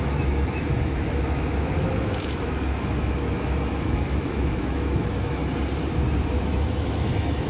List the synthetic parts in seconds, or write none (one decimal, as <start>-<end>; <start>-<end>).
0.0-5.4; 6.4-7.5